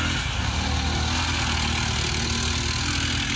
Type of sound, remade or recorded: recorded